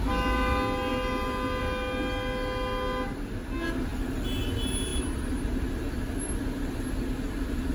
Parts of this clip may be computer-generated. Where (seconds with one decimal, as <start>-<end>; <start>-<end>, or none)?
none